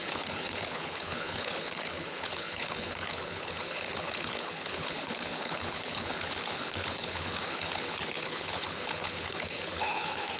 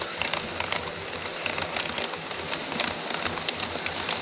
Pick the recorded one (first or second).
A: second